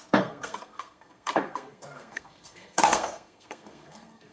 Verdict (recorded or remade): remade